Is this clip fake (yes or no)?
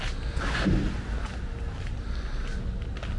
no